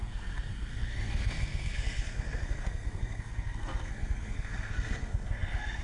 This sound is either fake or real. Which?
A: fake